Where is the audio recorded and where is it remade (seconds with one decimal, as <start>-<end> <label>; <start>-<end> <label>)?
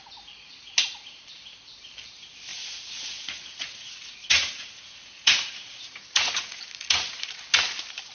0.0-2.5 recorded; 2.5-7.4 remade; 7.4-8.1 recorded